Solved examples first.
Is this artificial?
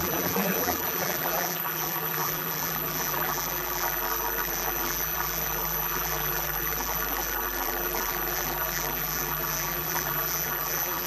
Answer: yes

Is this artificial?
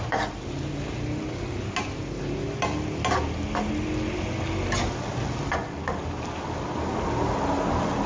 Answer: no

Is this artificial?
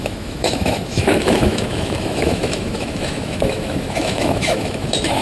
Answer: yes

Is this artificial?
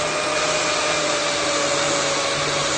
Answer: no